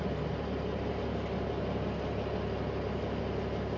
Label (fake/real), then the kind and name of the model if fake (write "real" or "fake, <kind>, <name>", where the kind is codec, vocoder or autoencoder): real